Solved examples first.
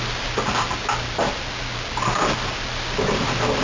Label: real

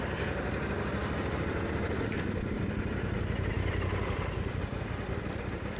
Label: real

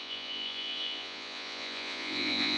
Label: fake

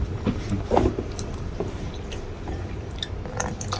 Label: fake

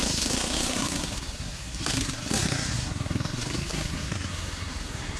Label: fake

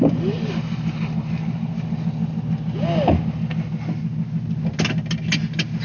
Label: real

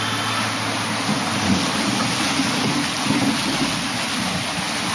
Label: real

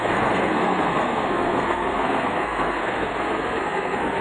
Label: fake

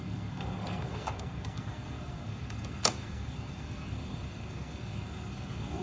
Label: fake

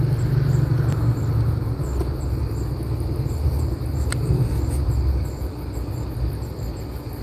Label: real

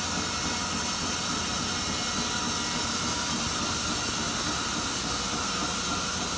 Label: real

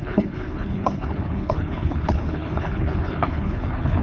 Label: fake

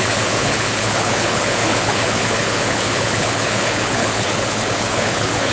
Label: fake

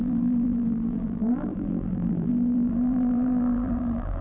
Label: fake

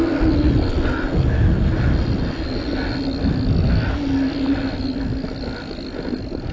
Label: real